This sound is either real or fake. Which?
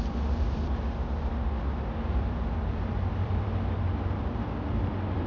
fake